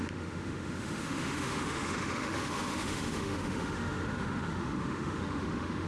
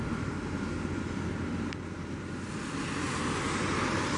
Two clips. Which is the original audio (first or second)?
second